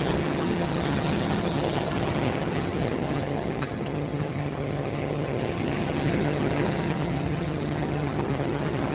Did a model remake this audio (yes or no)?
yes